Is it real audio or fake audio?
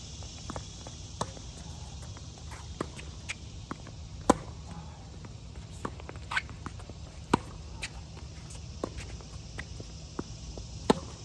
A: real